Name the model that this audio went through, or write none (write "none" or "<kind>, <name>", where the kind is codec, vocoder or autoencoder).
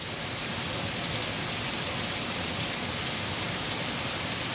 none